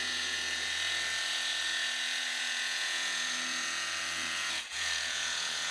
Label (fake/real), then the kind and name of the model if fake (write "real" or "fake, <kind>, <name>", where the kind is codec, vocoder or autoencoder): fake, vocoder, Vocos